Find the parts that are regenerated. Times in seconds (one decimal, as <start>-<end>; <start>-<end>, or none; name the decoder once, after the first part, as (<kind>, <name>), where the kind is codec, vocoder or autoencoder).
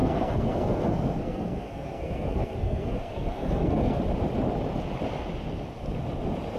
0.0-4.0 (codec, SNAC)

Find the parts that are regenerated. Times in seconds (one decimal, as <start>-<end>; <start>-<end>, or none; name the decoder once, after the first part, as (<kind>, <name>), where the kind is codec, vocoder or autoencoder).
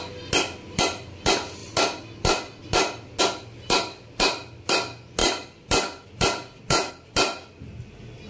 none